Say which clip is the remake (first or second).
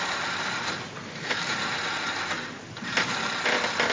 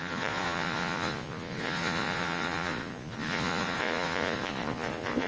second